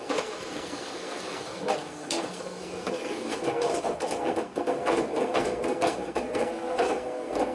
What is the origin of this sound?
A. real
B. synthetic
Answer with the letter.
B